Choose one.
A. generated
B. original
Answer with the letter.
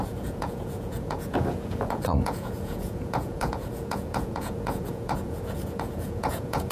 A